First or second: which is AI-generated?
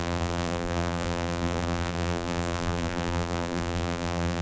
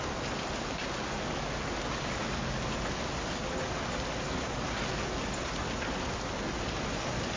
first